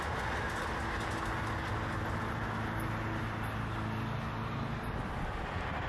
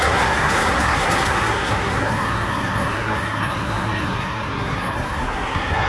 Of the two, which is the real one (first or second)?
first